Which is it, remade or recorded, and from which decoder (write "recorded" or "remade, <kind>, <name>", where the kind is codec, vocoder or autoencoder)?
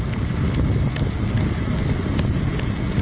recorded